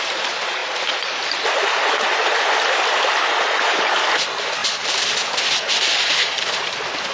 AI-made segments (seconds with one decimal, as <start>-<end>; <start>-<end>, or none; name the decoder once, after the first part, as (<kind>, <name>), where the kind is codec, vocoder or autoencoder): 0.0-7.1 (vocoder, BigVGAN v2)